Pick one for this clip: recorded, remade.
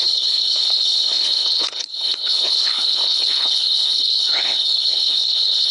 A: remade